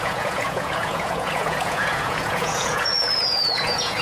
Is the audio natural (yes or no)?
no